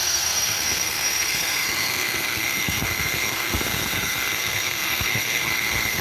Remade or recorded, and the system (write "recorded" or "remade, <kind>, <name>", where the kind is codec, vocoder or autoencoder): remade, codec, SNAC